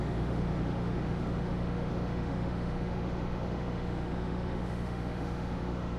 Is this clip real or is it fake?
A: fake